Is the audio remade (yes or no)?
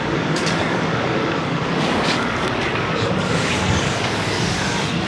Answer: yes